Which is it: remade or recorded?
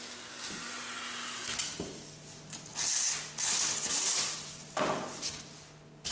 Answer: recorded